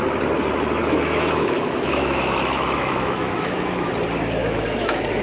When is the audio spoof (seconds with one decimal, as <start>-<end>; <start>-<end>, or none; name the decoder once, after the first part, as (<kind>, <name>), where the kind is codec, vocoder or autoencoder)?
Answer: 0.8-3.9 (autoencoder, DAC-VAE); 4.4-5.2